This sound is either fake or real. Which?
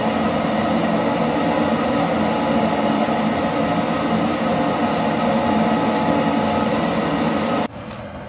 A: real